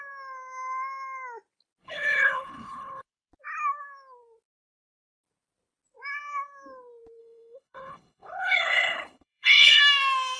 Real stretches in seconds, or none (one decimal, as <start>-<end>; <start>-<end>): 0.0-1.8; 3.3-7.2; 9.8-10.4